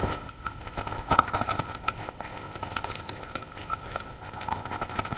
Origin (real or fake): fake